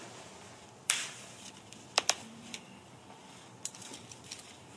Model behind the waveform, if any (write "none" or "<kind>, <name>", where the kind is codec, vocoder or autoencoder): vocoder, BigVGAN v2